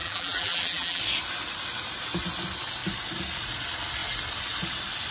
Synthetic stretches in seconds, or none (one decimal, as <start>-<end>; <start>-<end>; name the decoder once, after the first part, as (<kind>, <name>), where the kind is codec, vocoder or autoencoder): 0.0-1.0 (vocoder, BigVGAN v2)

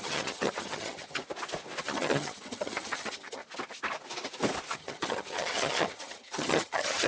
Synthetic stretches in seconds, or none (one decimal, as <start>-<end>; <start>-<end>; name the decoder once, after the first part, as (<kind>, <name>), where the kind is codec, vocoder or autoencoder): 0.0-1.2 (vocoder, HiFi-GAN); 1.8-3.4; 4.7-7.1

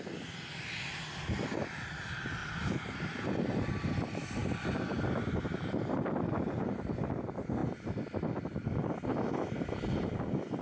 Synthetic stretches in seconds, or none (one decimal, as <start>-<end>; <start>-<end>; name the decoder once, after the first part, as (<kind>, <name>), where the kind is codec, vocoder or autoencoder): none

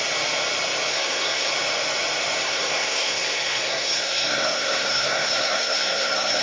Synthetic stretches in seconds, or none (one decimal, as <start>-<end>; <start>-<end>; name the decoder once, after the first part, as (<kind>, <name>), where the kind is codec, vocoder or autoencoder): 0.9-1.5 (codec, SNAC); 2.4-6.4

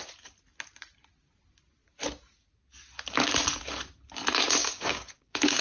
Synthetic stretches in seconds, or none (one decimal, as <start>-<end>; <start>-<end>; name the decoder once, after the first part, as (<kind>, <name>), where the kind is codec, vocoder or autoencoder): 4.6-5.6 (codec, DAC)